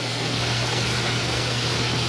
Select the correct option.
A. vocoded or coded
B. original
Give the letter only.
A